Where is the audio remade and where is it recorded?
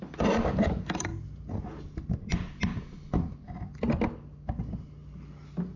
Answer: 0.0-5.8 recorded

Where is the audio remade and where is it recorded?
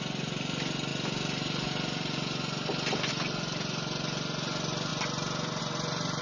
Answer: 0.0-6.2 recorded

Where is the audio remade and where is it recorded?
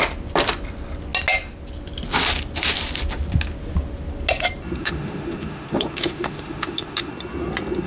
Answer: 0.0-4.8 recorded; 4.8-7.1 remade; 7.1-7.9 recorded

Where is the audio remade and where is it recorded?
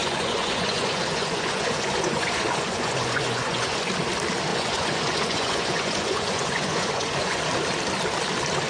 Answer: 0.0-3.9 remade; 3.9-4.5 recorded; 4.5-7.4 remade; 7.4-8.7 recorded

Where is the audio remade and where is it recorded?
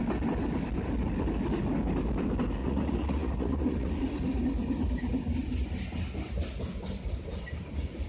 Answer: 0.0-2.6 recorded; 2.6-4.0 remade; 4.0-8.1 recorded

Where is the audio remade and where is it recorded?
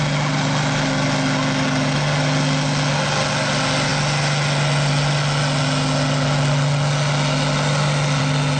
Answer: 0.0-8.6 recorded